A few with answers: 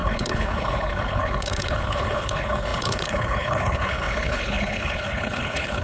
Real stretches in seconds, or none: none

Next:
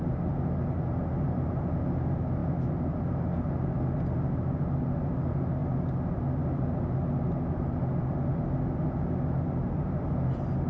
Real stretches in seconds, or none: 0.0-10.7

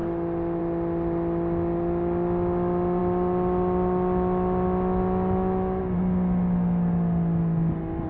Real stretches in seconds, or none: 0.0-8.1

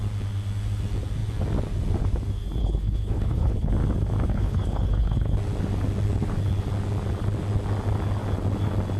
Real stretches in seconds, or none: 0.0-2.6; 3.7-4.3; 5.3-9.0

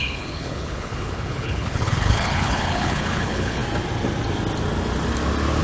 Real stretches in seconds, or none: 3.6-5.6

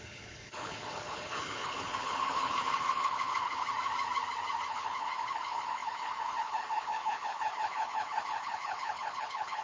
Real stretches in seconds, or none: 3.7-4.7